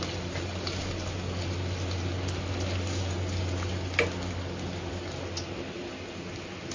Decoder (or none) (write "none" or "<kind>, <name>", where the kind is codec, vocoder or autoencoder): none